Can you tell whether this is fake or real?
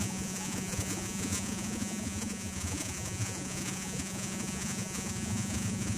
fake